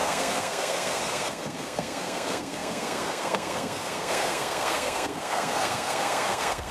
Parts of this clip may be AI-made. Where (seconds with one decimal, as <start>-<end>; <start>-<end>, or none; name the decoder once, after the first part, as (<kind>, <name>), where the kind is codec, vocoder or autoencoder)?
0.0-6.7 (codec, SNAC)